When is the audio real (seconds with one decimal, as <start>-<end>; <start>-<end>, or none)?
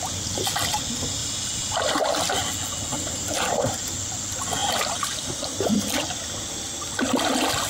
0.0-1.2; 2.2-2.9; 4.0-7.7